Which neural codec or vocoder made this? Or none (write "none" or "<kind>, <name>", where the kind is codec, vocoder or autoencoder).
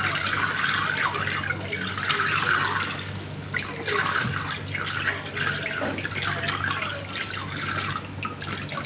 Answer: none